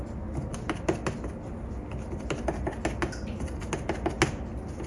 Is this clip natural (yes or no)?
yes